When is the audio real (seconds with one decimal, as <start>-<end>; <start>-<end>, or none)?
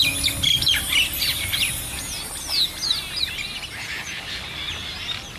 0.0-5.4